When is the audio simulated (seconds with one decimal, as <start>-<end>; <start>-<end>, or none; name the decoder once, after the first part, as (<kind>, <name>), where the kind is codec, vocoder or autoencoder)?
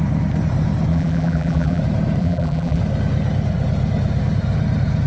0.9-1.8 (vocoder, BigVGAN v2); 2.2-2.8